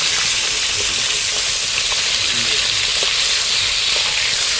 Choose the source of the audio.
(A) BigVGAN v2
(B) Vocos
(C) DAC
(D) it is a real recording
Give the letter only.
D